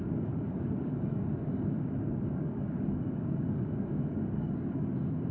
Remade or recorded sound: remade